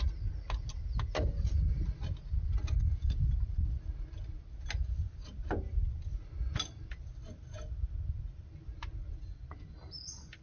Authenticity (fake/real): real